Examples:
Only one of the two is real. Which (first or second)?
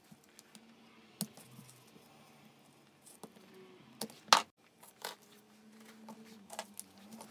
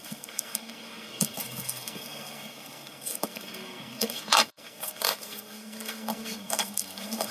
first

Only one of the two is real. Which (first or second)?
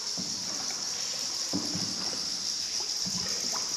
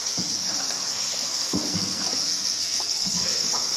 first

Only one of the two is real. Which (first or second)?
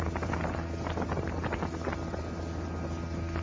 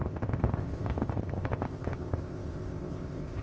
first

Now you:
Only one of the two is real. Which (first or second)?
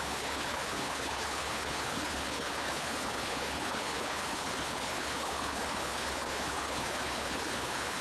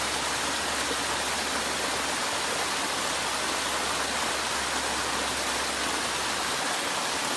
second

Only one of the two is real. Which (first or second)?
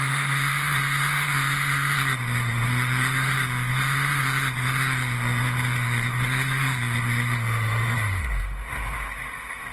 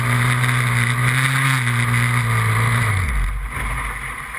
second